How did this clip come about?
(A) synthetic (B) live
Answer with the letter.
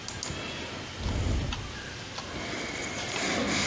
B